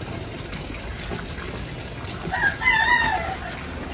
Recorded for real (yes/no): yes